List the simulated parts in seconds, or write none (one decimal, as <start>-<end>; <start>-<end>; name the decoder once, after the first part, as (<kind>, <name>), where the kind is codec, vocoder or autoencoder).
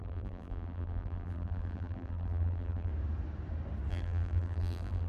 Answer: 0.0-2.9 (vocoder, BigVGAN v2); 3.9-5.1